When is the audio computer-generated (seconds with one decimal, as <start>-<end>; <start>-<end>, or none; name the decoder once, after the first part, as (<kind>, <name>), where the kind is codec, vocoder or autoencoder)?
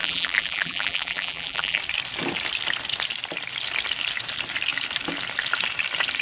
0.0-1.8 (vocoder, BigVGAN v2)